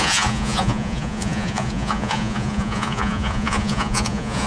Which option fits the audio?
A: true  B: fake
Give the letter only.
B